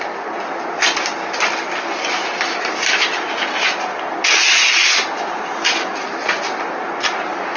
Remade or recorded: recorded